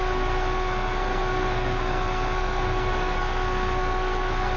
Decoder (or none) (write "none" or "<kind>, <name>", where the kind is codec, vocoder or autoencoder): codec, SNAC